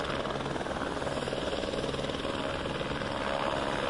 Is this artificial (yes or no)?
no